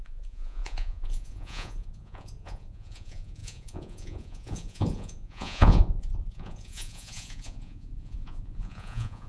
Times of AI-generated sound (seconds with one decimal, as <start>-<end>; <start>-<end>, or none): 0.0-9.3